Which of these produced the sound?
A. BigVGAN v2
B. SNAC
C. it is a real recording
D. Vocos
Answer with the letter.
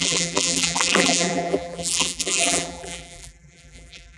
A